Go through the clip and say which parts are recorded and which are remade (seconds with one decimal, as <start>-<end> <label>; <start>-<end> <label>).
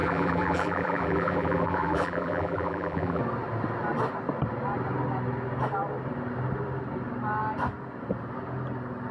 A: 0.0-3.2 remade; 3.2-9.1 recorded